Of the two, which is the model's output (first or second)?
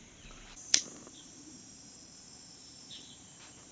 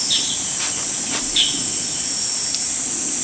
first